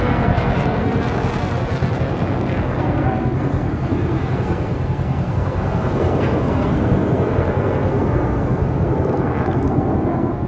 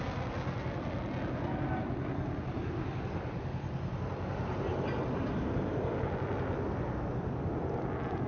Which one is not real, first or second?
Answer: first